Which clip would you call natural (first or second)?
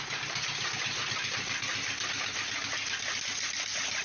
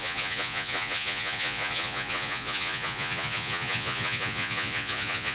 first